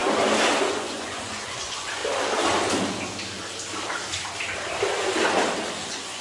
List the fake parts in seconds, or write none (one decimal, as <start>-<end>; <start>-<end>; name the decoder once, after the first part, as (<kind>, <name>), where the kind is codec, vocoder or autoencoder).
0.6-2.0 (vocoder, Vocos); 5.7-6.2